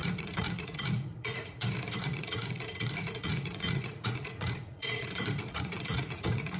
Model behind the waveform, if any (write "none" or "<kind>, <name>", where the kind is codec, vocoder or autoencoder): vocoder, Vocos